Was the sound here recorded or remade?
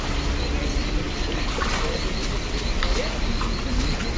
recorded